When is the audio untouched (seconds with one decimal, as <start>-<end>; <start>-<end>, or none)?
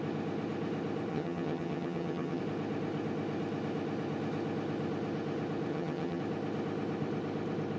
0.0-1.1; 2.4-5.7; 6.2-7.8